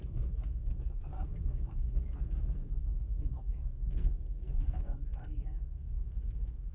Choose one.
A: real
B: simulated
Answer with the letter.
B